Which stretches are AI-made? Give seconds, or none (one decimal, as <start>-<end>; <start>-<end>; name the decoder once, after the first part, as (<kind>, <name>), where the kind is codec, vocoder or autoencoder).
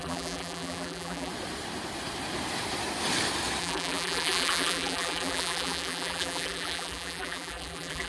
0.0-1.3 (vocoder, BigVGAN v2); 3.6-8.1